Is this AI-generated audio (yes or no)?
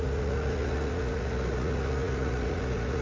yes